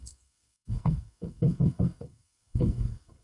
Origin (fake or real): fake